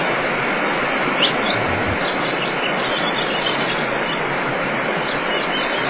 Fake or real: real